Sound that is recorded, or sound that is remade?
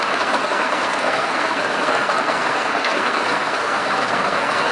remade